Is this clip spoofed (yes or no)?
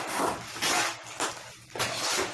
no